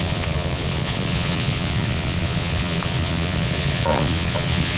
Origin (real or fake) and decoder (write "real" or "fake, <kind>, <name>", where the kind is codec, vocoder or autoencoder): fake, vocoder, Vocos